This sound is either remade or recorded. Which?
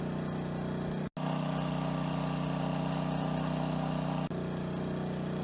recorded